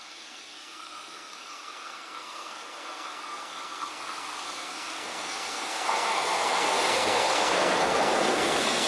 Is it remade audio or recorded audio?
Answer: remade